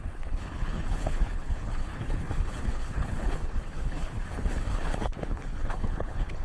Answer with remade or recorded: remade